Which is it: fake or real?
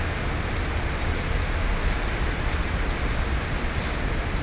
real